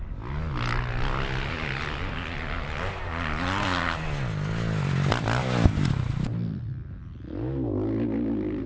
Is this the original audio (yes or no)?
yes